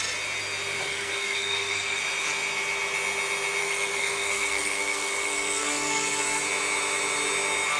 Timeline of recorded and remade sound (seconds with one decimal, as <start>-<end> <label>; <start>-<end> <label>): 0.0-0.8 recorded; 0.8-2.0 remade; 2.0-3.6 recorded; 3.6-6.4 remade; 6.4-7.8 recorded